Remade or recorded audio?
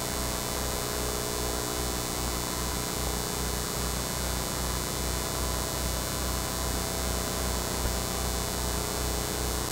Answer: recorded